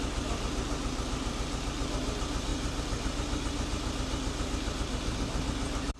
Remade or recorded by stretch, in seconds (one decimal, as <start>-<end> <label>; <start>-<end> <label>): 0.0-6.0 recorded